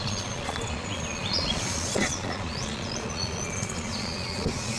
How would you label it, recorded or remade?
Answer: remade